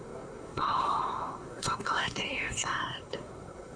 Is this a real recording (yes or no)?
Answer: no